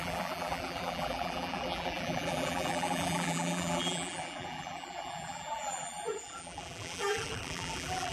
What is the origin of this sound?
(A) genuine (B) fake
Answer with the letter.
B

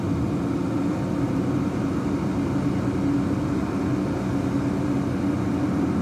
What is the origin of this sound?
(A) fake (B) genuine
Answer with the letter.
B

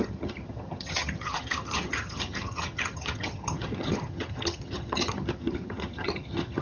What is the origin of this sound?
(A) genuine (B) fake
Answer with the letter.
B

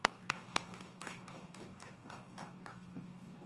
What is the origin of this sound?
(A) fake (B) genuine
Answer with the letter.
A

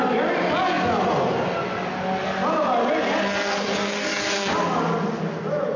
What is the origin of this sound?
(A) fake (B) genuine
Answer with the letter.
B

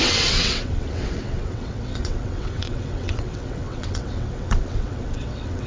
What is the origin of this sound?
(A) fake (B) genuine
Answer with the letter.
A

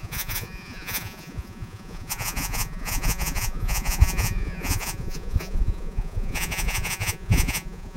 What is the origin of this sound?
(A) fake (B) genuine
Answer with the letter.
A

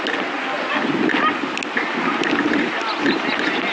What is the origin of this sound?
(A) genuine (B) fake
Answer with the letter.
A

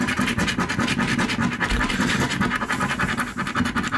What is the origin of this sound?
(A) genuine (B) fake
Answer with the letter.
A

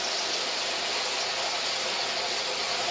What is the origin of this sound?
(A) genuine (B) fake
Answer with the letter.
A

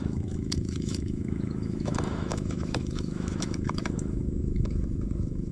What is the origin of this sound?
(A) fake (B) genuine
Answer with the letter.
A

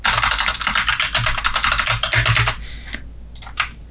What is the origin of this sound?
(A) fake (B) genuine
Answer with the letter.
B